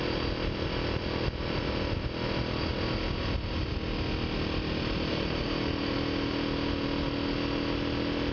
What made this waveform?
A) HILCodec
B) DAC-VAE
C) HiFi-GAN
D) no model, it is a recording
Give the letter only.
D